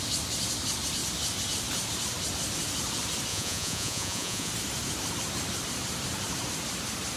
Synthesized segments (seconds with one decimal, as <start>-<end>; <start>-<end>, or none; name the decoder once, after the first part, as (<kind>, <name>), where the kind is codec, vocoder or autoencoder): 3.3-4.5 (vocoder, Vocos)